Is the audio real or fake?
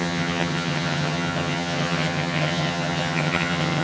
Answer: fake